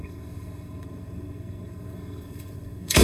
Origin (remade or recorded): remade